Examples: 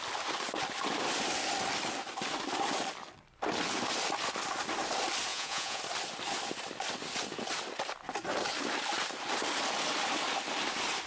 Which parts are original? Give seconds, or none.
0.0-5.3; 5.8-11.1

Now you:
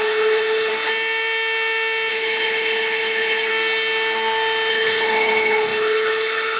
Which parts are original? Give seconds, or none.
0.7-2.1; 3.5-4.7